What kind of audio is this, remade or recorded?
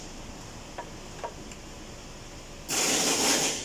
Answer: recorded